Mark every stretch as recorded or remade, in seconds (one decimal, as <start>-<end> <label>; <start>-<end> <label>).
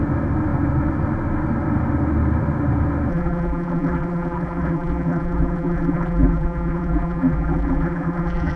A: 0.0-3.1 recorded; 3.1-8.6 remade